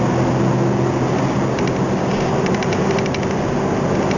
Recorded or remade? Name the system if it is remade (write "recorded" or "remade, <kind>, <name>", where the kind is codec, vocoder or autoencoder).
recorded